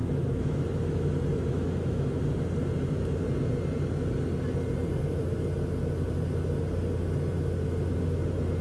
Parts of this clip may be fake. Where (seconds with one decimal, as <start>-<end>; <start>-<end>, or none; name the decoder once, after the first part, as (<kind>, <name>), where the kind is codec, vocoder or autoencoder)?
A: 0.0-2.2 (autoencoder, DAC-VAE)